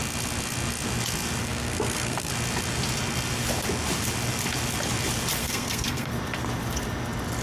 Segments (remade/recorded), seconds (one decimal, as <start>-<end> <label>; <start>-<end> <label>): 0.0-1.4 recorded; 1.4-2.3 remade; 2.3-5.4 recorded; 5.4-6.1 remade; 6.1-7.4 recorded